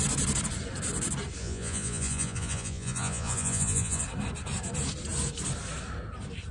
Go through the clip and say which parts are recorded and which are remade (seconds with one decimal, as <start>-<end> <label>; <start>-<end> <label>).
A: 0.0-1.4 recorded; 1.4-4.0 remade; 4.0-6.5 recorded